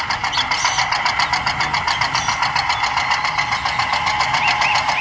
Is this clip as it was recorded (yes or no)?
yes